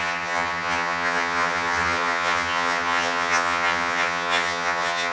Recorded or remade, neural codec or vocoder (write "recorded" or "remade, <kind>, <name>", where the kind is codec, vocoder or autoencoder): remade, vocoder, HiFi-GAN